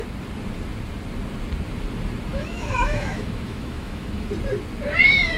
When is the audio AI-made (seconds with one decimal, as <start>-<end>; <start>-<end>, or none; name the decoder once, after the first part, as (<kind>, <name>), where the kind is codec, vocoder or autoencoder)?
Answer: 2.3-4.3 (autoencoder, DAC-VAE)